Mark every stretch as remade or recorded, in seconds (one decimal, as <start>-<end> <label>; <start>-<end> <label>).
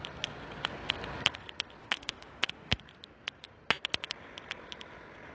0.0-1.8 recorded; 1.8-2.8 remade; 2.8-5.3 recorded